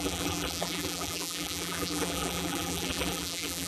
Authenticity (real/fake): fake